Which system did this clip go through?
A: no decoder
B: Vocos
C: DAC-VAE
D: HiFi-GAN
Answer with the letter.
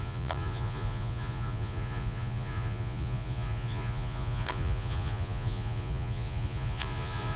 B